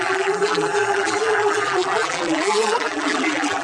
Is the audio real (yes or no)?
no